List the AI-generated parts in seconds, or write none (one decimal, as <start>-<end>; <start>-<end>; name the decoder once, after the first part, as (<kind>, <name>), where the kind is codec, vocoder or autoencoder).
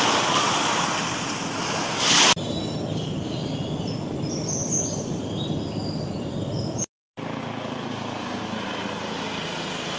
1.6-3.2 (vocoder, BigVGAN v2)